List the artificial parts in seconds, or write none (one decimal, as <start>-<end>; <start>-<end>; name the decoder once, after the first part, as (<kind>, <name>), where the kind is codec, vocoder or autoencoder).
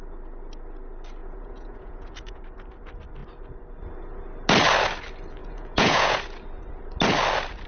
1.2-2.4 (vocoder, Vocos); 5.4-6.2